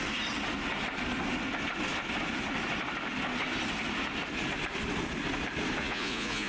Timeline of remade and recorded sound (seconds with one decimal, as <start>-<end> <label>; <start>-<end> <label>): 0.0-5.8 recorded; 5.8-6.5 remade